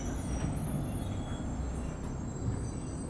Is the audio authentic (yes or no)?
yes